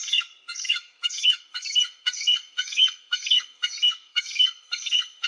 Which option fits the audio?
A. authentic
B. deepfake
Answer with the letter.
B